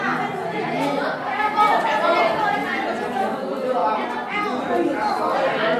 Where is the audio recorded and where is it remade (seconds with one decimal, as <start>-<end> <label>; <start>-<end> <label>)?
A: 0.0-5.8 recorded